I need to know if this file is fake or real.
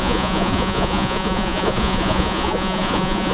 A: fake